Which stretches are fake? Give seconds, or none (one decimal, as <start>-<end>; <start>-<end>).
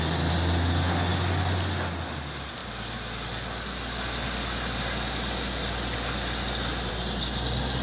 none